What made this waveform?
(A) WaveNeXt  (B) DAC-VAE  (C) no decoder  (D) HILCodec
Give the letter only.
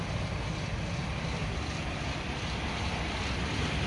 C